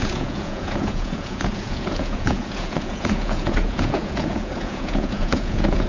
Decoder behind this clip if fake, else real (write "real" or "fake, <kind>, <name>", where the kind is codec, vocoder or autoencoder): fake, vocoder, Vocos